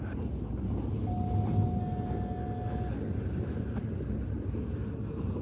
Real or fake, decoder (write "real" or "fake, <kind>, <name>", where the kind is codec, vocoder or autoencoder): real